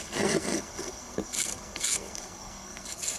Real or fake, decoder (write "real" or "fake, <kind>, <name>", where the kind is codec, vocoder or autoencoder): fake, codec, SNAC